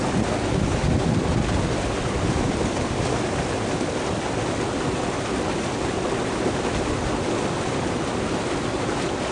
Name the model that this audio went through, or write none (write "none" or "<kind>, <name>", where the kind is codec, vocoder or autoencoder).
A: none